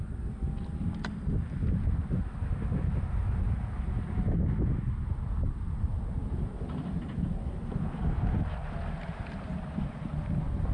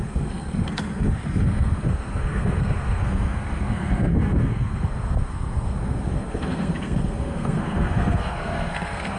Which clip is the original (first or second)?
first